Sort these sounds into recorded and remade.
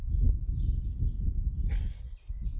recorded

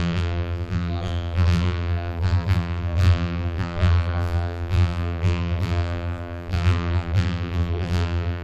remade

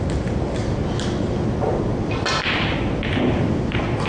recorded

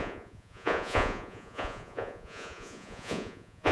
remade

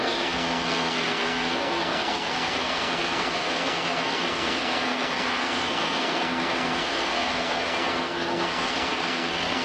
remade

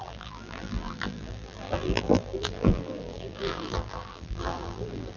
remade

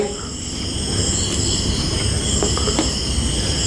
recorded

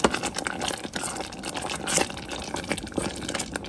recorded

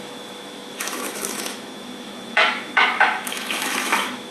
remade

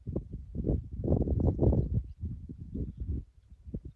recorded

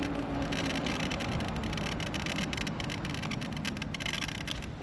recorded